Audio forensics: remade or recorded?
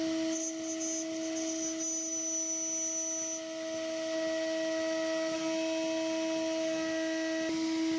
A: recorded